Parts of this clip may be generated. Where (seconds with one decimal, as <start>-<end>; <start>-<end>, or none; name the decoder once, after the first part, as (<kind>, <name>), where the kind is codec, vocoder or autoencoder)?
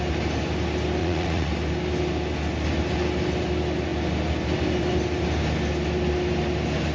1.0-1.5 (vocoder, Vocos)